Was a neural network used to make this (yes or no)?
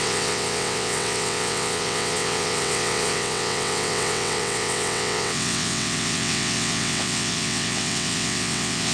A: yes